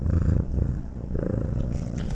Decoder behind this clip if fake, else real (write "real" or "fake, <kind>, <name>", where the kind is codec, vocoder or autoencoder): fake, vocoder, Vocos